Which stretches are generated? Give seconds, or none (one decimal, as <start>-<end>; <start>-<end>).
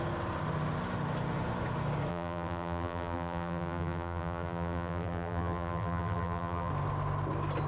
2.1-6.7